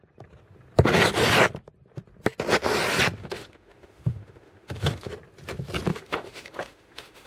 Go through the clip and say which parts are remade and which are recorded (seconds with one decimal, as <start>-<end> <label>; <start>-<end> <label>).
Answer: 0.0-3.2 recorded; 3.2-5.1 remade; 5.1-5.9 recorded; 5.9-7.3 remade